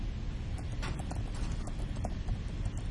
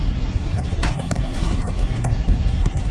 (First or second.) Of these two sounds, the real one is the first